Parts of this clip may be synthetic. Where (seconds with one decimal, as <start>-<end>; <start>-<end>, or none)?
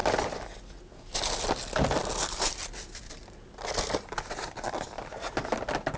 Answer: none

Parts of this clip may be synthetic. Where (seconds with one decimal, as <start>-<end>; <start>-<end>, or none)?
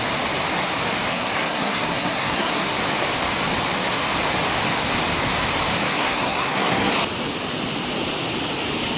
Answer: 1.1-2.8; 5.9-6.9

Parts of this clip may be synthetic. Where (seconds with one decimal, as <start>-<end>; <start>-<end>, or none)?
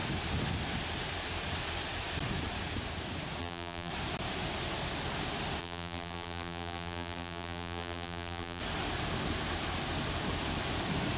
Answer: 3.4-3.9; 5.6-8.6